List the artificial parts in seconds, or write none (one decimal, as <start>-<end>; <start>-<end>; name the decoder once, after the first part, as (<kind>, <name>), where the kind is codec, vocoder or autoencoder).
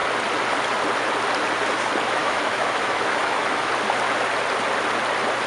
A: 2.2-3.7 (autoencoder, DAC-VAE)